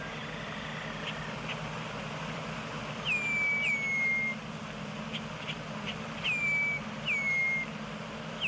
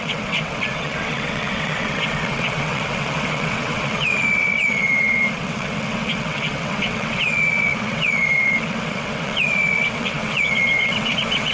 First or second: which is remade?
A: second